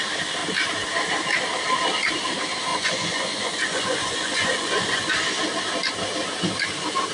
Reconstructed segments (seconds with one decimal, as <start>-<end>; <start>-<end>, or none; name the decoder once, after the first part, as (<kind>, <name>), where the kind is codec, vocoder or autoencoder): 2.7-5.1 (vocoder, Vocos)